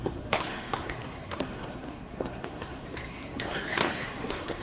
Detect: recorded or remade remade